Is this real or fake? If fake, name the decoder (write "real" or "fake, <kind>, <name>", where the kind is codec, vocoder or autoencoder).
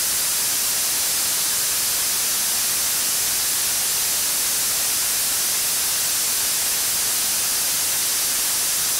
real